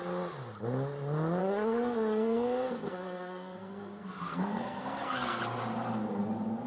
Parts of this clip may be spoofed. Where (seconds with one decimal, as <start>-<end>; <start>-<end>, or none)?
1.4-5.4